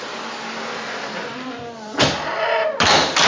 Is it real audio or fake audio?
real